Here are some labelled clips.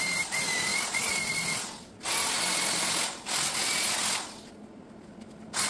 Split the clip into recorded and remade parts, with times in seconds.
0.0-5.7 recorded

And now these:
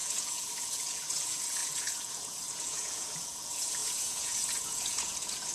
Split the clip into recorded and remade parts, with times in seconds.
0.0-5.5 remade

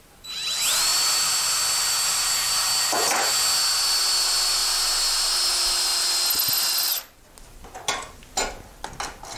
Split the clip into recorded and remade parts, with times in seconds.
0.0-9.4 recorded